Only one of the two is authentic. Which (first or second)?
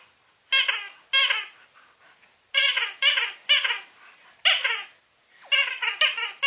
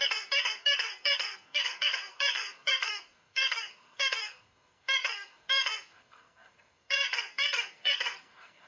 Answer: first